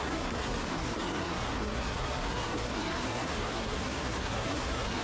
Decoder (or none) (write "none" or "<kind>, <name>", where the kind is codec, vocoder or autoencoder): codec, SNAC